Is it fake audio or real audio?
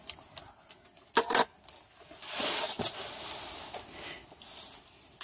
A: real